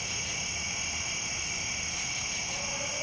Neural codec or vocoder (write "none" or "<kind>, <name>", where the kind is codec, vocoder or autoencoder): none